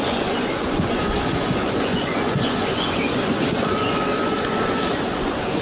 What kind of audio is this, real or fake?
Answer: fake